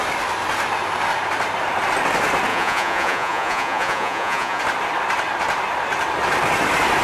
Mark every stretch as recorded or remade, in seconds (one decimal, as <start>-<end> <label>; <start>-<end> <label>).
0.0-2.5 recorded; 2.5-4.6 remade; 4.6-7.0 recorded